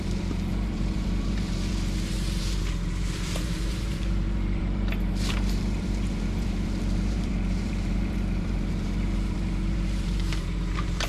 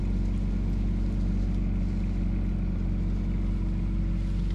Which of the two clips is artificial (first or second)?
first